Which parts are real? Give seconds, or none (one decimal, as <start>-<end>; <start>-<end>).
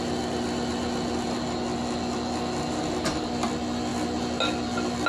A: 0.0-5.1